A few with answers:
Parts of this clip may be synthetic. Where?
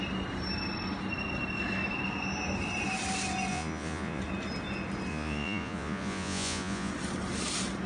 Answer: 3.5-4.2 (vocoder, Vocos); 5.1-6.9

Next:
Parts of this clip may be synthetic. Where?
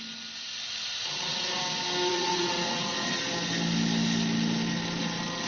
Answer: 1.0-1.6 (vocoder, WaveNeXt); 2.1-3.2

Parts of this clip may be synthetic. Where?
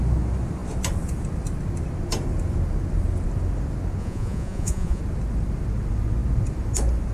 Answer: 4.0-5.0 (vocoder, Vocos)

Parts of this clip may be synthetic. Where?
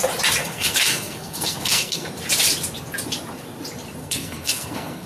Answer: 0.4-2.1 (codec, SNAC); 4.0-5.1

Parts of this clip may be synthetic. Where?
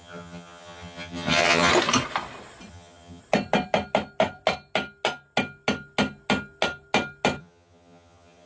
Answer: 0.0-1.7 (vocoder, HiFi-GAN); 2.7-3.2; 7.4-8.5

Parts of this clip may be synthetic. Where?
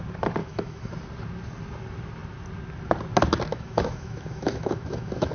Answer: 0.4-0.9 (autoencoder, DAC-VAE); 3.5-5.3